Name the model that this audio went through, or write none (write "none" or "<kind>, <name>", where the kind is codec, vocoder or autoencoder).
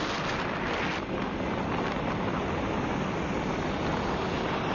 none